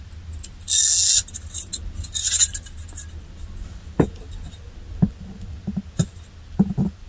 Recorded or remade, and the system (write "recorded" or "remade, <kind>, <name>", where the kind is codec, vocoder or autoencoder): recorded